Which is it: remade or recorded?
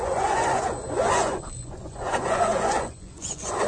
remade